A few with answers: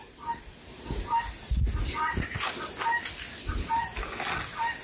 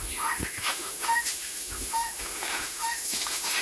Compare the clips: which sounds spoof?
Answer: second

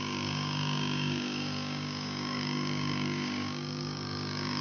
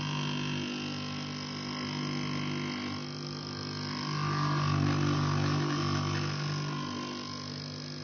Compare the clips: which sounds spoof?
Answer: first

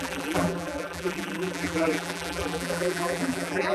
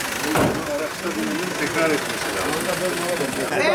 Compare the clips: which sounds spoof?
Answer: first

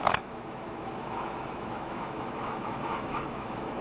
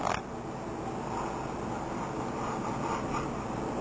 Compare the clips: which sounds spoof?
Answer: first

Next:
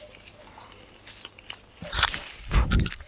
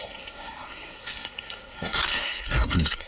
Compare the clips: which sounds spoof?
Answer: second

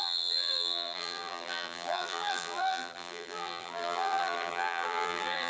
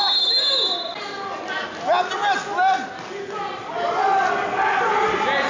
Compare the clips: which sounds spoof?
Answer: first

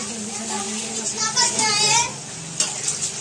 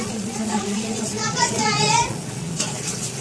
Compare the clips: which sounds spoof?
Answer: second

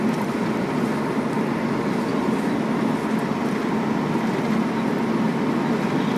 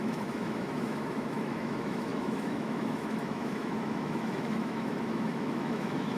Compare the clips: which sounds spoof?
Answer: second